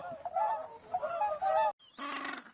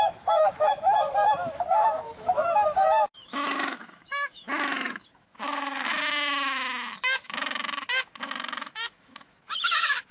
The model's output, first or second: second